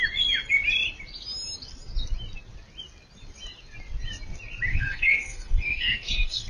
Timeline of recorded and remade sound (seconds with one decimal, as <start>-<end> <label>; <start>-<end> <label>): 0.0-4.7 recorded; 4.7-6.5 remade